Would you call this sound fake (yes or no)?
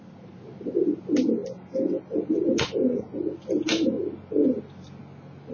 no